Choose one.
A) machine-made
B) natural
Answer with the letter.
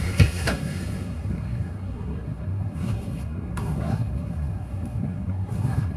A